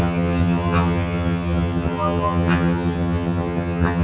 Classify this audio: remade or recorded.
remade